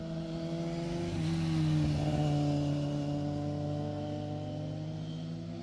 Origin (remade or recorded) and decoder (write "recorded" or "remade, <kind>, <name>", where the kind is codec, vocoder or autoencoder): recorded